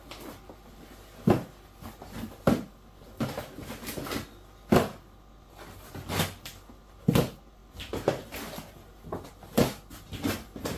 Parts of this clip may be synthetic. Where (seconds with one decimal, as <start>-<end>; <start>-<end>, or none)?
none